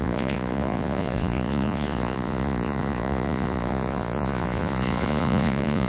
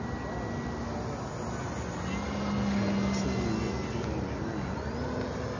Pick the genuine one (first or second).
second